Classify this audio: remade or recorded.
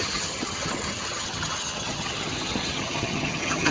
remade